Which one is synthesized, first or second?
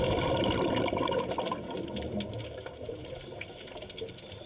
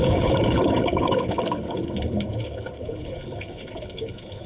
second